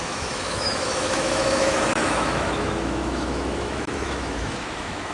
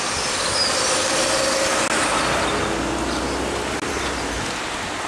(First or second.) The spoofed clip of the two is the first